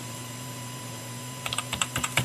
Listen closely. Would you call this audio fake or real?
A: fake